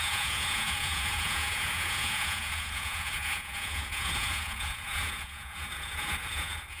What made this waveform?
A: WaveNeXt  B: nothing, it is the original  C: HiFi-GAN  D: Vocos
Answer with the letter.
D